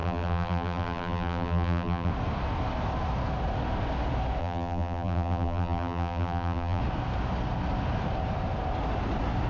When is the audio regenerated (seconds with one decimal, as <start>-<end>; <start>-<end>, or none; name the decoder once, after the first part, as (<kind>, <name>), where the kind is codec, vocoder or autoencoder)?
0.0-2.1 (vocoder, BigVGAN v2); 4.4-6.8